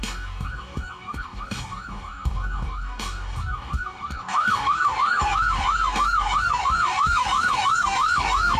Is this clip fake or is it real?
fake